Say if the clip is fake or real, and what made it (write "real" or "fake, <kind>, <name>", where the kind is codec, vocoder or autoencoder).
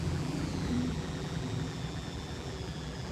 fake, vocoder, BigVGAN v2